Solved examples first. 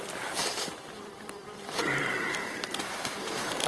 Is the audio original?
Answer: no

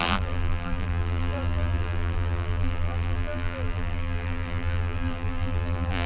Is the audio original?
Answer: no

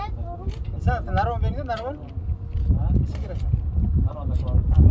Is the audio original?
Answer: yes